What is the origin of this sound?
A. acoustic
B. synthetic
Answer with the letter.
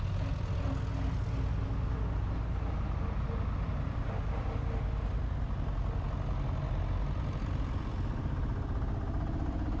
A